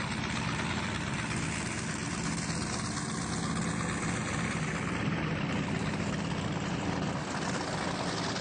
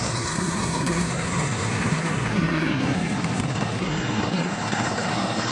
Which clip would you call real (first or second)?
first